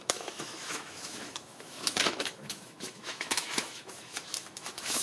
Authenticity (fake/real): fake